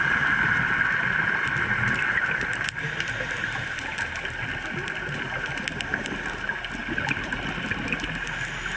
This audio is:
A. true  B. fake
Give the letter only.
A